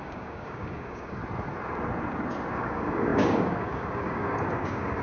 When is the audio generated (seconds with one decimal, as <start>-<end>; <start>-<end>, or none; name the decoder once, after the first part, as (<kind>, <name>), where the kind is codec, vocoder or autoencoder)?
0.0-1.2 (codec, DAC); 2.5-5.0